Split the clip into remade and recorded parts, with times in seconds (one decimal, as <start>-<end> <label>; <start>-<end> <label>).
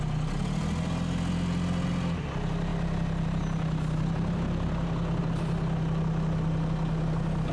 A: 0.0-7.5 recorded